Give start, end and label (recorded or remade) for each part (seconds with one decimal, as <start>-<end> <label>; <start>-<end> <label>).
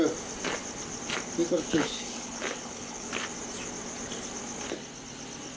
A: 0.0-1.5 recorded; 1.5-3.1 remade; 3.1-5.6 recorded